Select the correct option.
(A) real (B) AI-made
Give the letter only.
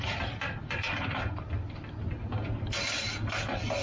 A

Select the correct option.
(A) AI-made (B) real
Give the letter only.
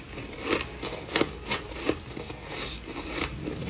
B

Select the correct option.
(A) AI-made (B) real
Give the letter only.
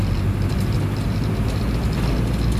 B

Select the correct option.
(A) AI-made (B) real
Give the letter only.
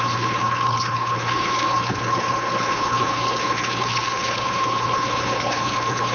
A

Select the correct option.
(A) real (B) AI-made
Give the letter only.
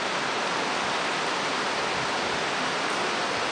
A